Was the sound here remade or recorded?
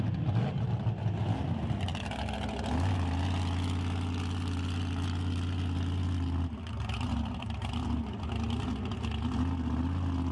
recorded